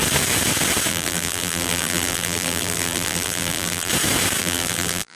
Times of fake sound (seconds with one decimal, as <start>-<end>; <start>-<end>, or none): 0.9-3.9; 4.4-5.2